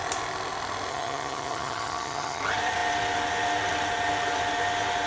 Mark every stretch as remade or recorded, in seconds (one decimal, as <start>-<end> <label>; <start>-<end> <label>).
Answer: 0.0-0.9 recorded; 0.9-2.4 remade; 2.4-5.1 recorded